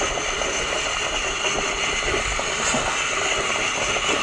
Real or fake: real